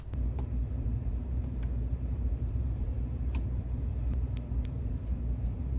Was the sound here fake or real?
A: fake